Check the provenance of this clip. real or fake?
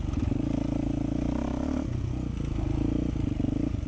real